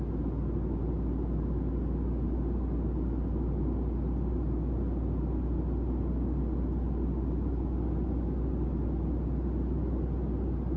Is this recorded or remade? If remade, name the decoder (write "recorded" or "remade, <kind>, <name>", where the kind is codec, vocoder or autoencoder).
recorded